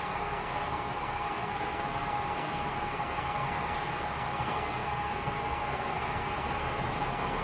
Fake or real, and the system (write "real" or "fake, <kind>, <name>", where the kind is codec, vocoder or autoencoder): fake, codec, SNAC